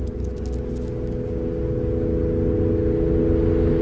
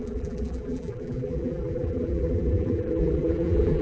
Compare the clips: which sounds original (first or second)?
first